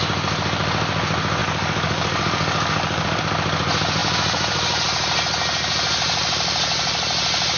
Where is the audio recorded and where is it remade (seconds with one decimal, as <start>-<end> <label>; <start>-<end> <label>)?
0.0-1.4 recorded; 1.4-3.2 remade; 3.2-7.6 recorded